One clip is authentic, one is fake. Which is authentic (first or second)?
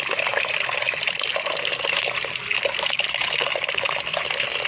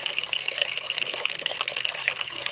first